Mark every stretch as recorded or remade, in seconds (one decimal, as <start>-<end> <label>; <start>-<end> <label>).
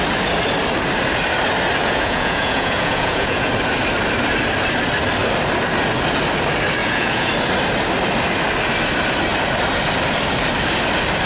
0.0-1.8 recorded; 1.8-3.5 remade; 3.5-6.8 recorded; 6.8-7.3 remade; 7.3-11.3 recorded